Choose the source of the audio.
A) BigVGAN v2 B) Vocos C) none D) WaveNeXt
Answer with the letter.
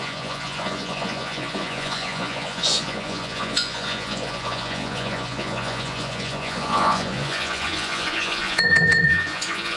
B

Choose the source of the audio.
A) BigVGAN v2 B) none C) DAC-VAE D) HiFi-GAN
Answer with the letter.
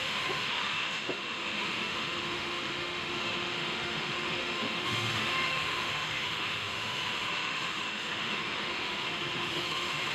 C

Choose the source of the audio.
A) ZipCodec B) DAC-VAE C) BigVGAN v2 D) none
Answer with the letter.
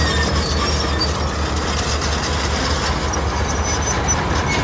D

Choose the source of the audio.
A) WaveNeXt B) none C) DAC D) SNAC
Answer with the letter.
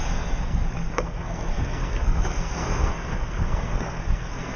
D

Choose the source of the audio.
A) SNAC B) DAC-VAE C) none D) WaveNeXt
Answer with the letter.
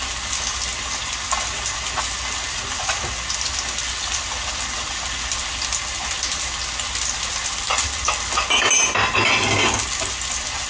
C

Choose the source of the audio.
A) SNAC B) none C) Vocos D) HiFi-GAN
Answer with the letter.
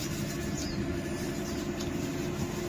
B